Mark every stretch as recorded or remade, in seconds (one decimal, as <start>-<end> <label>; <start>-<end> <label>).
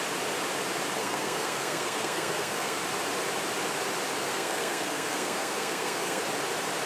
0.0-1.0 recorded; 1.0-2.8 remade; 2.8-4.2 recorded; 4.2-6.2 remade; 6.2-6.8 recorded